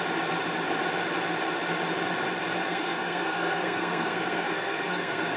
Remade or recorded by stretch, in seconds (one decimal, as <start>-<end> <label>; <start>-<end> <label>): 0.0-2.7 recorded; 2.7-5.4 remade